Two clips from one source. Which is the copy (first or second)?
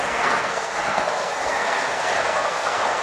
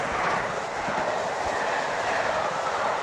first